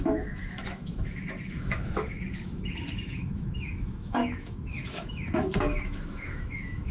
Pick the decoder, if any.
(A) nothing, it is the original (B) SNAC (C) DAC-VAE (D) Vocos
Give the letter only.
C